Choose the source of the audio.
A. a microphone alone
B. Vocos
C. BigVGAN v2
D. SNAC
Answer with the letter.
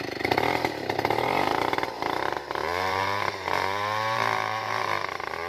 C